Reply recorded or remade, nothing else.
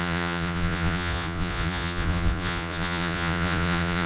remade